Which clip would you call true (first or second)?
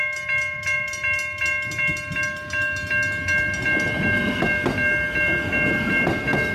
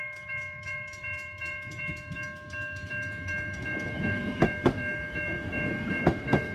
first